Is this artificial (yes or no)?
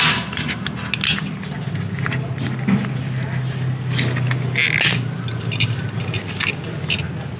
no